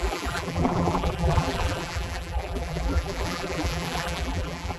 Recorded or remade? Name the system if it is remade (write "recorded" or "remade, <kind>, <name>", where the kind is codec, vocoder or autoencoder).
remade, vocoder, BigVGAN v2